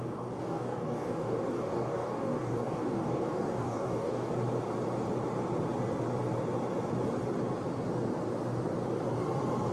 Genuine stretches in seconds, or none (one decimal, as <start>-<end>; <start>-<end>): 4.3-9.7